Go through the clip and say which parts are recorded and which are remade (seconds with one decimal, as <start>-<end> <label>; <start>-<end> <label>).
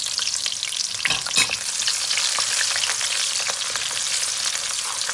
0.0-5.1 recorded